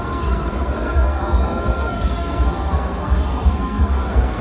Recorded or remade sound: remade